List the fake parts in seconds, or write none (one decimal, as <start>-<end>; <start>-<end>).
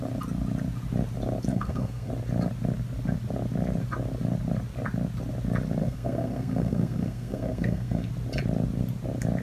1.5-2.1; 5.8-8.1